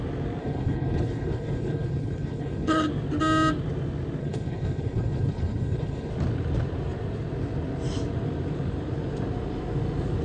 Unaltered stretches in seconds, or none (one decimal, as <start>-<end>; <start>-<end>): 0.0-0.4; 2.9-4.2; 6.1-10.2